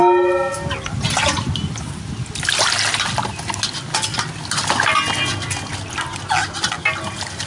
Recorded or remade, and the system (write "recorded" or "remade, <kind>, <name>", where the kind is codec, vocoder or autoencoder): recorded